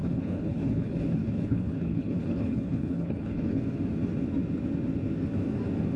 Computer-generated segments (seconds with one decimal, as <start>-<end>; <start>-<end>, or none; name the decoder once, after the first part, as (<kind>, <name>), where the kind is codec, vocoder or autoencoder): 0.0-3.6 (codec, HILCodec)